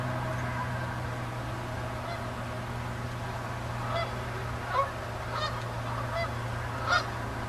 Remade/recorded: recorded